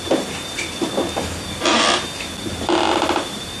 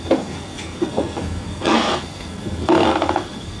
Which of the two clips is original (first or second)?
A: first